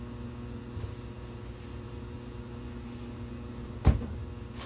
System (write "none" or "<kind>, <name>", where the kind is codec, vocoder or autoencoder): none